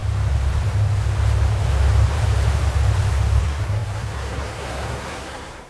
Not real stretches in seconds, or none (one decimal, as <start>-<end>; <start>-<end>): 3.4-5.7